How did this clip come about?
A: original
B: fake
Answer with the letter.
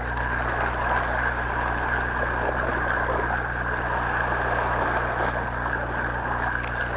A